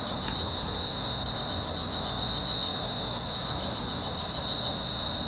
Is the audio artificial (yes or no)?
no